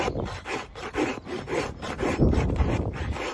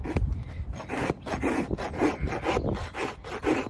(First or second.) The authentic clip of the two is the second